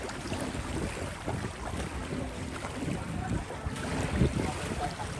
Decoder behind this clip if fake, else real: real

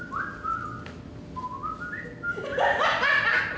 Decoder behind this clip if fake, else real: real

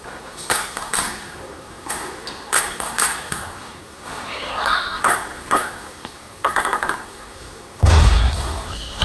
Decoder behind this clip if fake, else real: fake, codec, SNAC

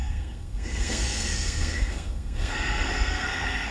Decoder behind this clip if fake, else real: fake, codec, SNAC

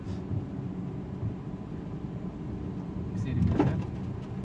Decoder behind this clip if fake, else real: real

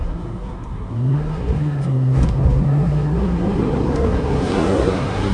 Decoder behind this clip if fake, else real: fake, codec, SNAC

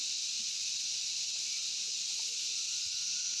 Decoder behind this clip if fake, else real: real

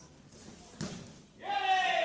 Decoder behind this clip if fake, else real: real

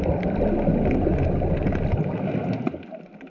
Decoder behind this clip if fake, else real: real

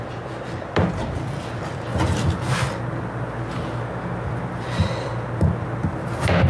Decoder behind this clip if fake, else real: real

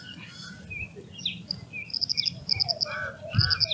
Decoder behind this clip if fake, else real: real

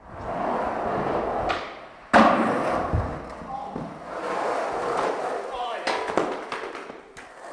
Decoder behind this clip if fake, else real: real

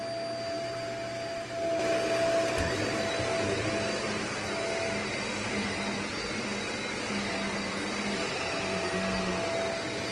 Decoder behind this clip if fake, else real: real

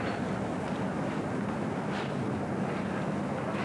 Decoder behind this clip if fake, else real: real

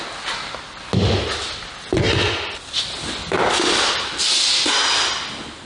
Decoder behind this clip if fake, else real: real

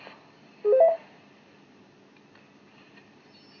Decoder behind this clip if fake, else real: real